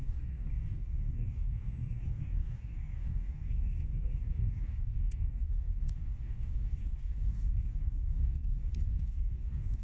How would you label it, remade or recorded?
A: remade